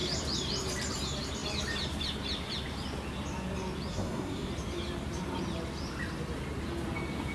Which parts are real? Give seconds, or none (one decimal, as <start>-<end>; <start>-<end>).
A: 0.0-3.9; 4.5-7.3

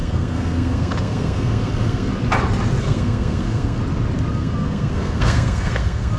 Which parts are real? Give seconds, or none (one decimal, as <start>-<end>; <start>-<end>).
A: 2.1-2.8; 3.8-4.3